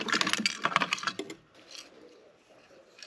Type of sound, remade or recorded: recorded